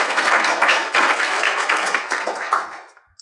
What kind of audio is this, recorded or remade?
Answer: remade